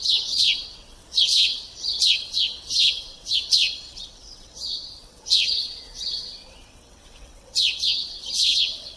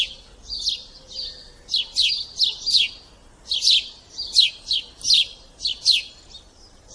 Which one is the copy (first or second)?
first